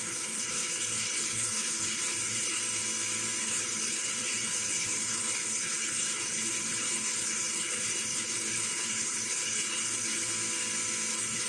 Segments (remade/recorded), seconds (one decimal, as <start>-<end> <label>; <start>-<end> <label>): 0.0-2.6 remade; 2.6-3.4 recorded; 3.4-10.3 remade; 10.3-11.1 recorded; 11.1-11.5 remade